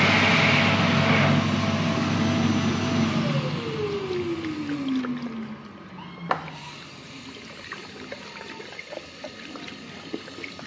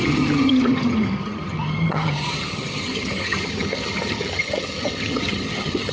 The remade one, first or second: second